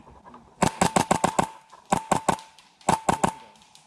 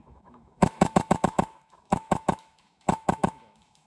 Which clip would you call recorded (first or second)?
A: first